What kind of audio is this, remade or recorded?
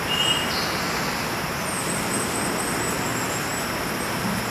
recorded